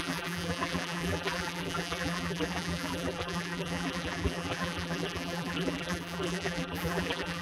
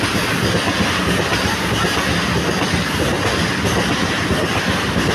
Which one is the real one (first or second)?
second